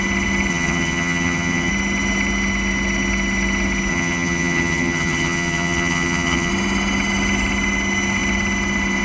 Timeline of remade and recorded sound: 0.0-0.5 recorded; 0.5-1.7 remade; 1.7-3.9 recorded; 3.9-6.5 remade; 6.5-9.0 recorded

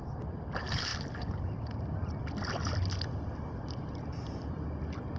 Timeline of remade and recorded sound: 0.0-5.2 recorded

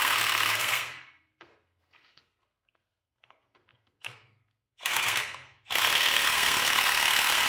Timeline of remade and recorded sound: 0.0-7.5 remade